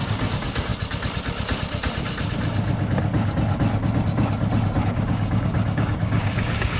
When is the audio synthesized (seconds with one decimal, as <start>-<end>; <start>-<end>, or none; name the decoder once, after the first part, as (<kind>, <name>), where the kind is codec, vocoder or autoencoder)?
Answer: 0.0-0.7 (codec, DAC); 4.8-6.8